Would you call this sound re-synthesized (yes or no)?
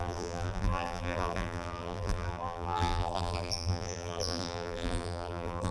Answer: yes